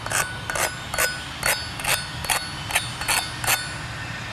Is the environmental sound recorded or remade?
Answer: recorded